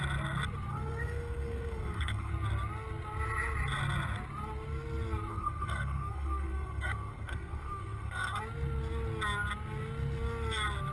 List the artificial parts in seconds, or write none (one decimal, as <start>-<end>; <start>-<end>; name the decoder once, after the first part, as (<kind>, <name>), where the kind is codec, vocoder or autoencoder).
0.7-2.3 (codec, SNAC); 5.3-8.4